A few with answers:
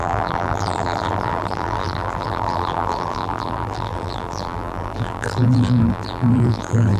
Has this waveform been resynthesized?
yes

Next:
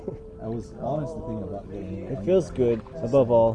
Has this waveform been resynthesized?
no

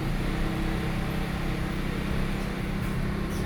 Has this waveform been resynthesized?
no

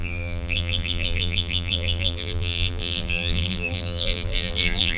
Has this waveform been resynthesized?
yes